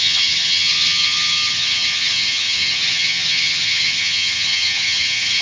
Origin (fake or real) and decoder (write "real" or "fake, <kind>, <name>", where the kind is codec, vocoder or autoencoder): fake, vocoder, HiFi-GAN